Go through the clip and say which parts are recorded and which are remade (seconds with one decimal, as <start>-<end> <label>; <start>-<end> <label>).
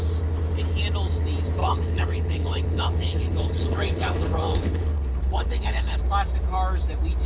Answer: 0.0-1.6 recorded; 1.6-6.0 remade; 6.0-7.3 recorded